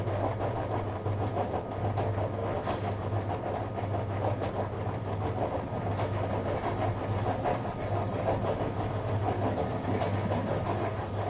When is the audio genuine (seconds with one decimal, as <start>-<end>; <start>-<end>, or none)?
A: 0.0-7.5; 10.0-10.4